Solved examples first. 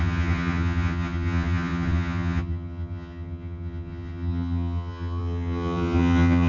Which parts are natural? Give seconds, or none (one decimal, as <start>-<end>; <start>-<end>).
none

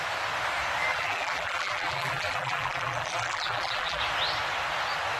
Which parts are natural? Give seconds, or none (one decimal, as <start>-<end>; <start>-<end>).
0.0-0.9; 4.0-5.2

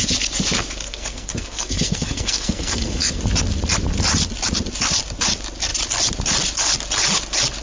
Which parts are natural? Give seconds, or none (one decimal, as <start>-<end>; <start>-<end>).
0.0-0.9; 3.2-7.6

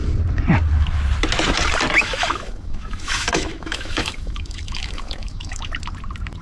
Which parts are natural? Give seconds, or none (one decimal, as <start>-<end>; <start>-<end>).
0.0-2.0; 5.7-6.4

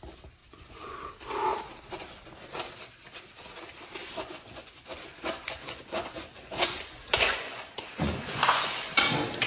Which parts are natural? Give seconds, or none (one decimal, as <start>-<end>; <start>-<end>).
0.0-0.4; 1.1-4.0; 9.0-9.5

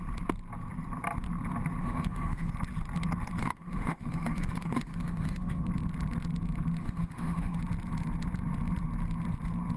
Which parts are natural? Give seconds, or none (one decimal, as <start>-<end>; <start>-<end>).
0.0-1.8; 2.5-3.4; 5.6-6.8; 7.6-9.8

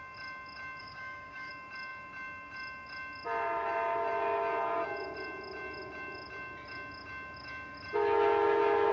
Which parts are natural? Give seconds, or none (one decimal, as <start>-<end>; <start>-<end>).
0.0-0.8; 1.5-8.9